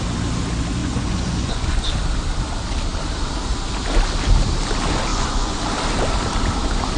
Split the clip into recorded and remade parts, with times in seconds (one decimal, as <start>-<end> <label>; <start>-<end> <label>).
0.0-0.8 recorded; 0.8-1.9 remade; 1.9-5.1 recorded; 5.1-5.6 remade; 5.6-7.0 recorded